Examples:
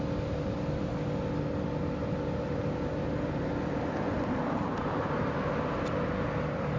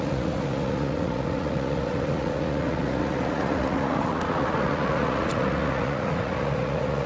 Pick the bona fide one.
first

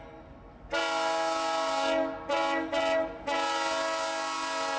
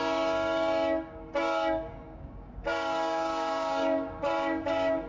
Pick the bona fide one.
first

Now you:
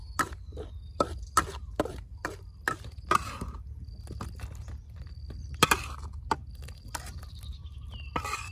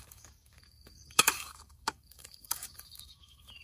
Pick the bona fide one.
first